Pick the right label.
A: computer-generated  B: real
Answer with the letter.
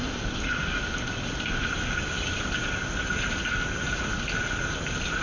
B